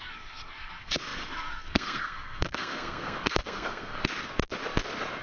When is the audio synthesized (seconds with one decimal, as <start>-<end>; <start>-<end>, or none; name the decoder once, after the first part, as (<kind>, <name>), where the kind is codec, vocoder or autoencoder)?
0.0-4.0 (codec, SNAC)